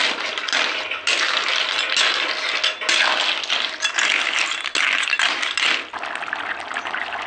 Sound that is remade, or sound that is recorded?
recorded